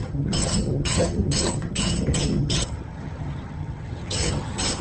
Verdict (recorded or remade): remade